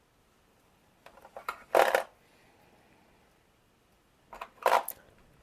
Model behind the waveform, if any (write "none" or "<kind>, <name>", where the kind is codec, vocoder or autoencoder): none